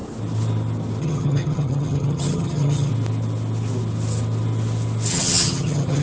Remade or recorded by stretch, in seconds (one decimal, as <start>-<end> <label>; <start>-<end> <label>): 0.0-1.0 recorded; 1.0-2.9 remade; 2.9-5.1 recorded; 5.1-6.0 remade